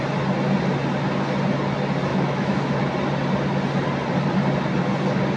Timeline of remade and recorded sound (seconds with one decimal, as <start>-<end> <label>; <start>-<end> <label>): 0.0-2.1 recorded; 2.1-2.8 remade; 2.8-5.4 recorded